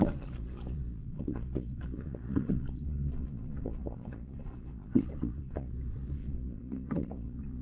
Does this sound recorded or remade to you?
remade